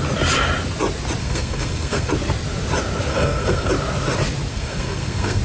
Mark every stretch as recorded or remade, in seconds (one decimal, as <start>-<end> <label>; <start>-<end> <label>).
0.0-1.2 recorded; 1.2-2.1 remade; 2.1-3.1 recorded; 3.1-3.7 remade; 3.7-4.5 recorded; 4.5-5.4 remade

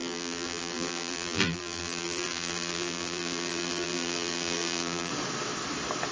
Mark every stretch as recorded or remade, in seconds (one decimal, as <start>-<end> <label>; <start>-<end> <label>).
0.0-5.1 remade; 5.1-6.1 recorded